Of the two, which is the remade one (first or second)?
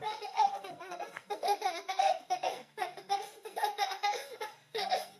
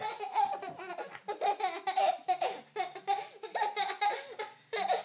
first